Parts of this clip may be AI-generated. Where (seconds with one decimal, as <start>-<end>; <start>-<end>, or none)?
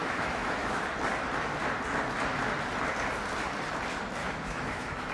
0.0-0.8; 4.2-5.1